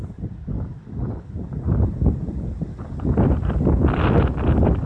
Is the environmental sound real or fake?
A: real